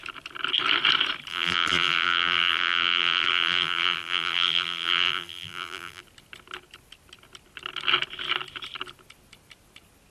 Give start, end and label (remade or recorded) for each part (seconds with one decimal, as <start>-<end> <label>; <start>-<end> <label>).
0.0-1.3 recorded; 1.3-6.0 remade; 6.0-10.1 recorded